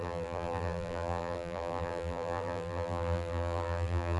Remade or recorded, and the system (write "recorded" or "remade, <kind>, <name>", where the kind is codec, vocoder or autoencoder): remade, vocoder, BigVGAN v2